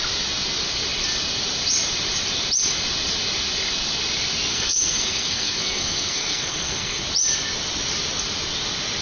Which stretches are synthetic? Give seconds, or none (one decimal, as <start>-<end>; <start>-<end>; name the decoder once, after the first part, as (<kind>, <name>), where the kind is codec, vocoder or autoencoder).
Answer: 4.5-7.0 (codec, SNAC)